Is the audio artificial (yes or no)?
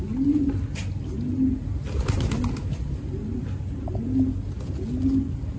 no